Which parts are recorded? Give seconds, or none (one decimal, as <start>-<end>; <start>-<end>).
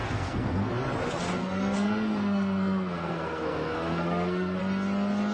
0.7-1.4; 4.6-5.3